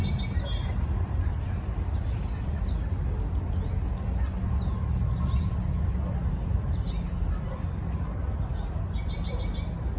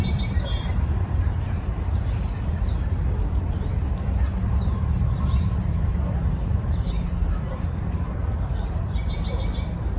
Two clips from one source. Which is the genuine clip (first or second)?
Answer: first